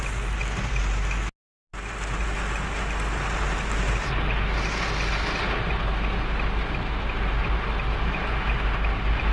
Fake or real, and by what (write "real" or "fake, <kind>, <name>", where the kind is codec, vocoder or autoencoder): real